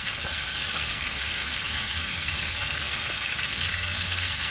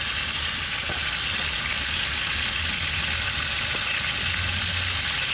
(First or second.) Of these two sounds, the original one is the second